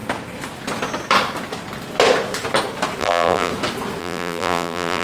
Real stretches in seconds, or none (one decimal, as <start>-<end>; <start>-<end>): 0.0-3.0; 3.5-4.0

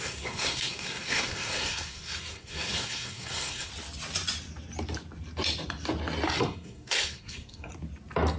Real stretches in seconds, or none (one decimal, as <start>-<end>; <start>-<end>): 3.7-6.4; 7.7-8.4

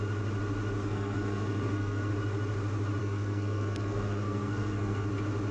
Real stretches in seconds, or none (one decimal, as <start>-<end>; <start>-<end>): 0.0-0.8; 2.1-3.0; 5.1-5.5

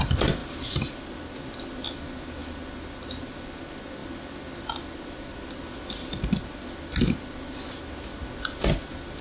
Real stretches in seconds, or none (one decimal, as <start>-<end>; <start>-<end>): 0.0-9.2

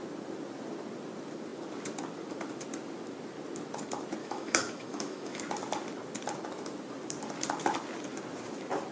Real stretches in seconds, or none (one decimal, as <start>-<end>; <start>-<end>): 0.0-4.2; 5.4-8.9

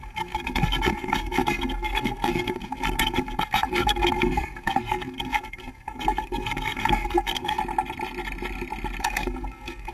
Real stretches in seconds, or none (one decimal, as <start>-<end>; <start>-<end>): 7.6-9.0

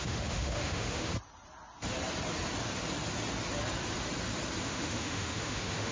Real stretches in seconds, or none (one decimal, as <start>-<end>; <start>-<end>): 1.1-4.6